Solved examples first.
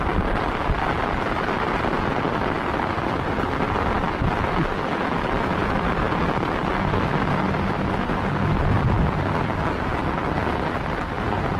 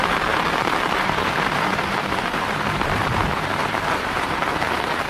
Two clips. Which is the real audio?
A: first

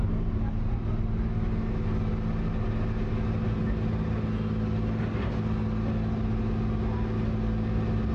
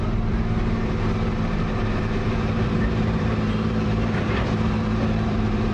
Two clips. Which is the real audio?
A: first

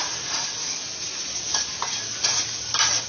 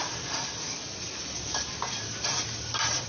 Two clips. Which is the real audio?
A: first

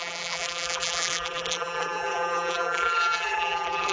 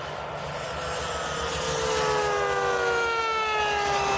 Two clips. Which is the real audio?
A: second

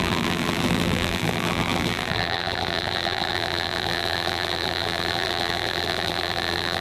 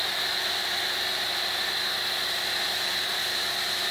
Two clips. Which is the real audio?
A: second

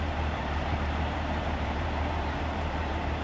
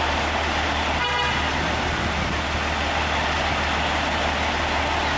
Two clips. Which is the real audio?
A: second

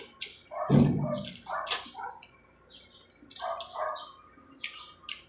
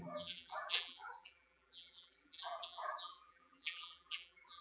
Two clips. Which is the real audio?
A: first